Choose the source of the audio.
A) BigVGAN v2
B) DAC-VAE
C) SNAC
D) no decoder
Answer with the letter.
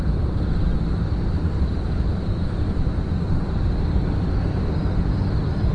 D